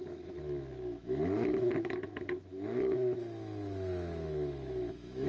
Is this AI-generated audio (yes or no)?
yes